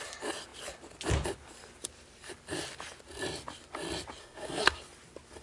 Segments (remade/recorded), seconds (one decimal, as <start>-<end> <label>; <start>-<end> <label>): 0.0-4.2 recorded; 4.2-4.8 remade; 4.8-5.4 recorded